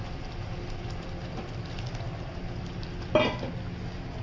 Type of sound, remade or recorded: recorded